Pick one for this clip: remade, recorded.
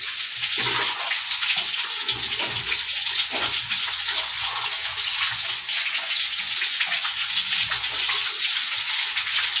remade